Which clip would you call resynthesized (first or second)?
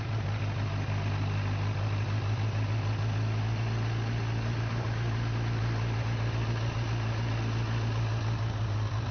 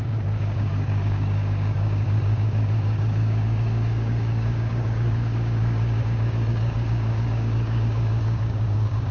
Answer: second